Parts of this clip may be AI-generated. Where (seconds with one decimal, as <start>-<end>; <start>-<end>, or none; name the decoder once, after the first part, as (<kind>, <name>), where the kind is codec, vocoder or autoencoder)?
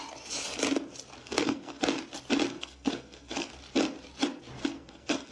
1.2-1.8 (codec, SNAC); 2.5-3.5; 4.6-5.3